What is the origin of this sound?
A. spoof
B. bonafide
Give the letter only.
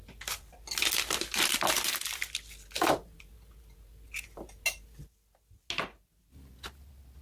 B